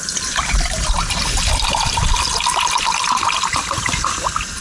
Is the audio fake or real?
real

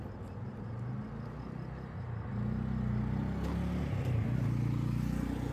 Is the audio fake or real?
real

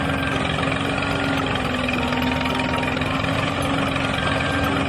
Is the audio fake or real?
real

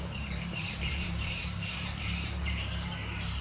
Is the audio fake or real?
fake